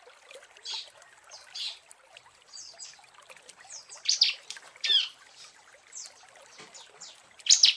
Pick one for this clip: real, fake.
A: real